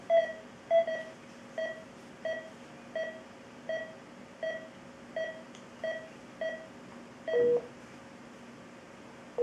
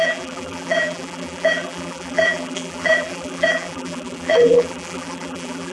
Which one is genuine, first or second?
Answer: first